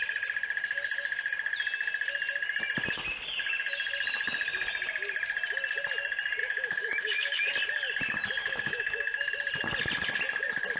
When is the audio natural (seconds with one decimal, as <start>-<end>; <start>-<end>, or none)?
0.0-6.4; 7.5-8.4; 9.3-10.8